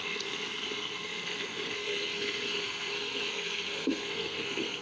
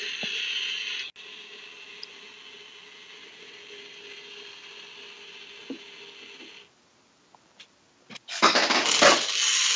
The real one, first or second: second